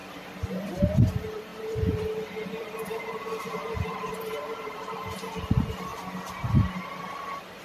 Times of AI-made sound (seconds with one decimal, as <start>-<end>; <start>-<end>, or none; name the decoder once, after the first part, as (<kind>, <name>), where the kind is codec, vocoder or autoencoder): 0.5-5.9 (vocoder, BigVGAN v2); 7.0-7.6